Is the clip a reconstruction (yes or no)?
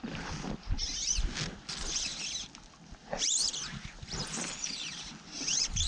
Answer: no